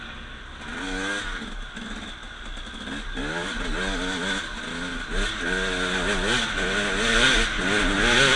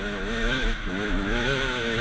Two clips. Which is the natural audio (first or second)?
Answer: first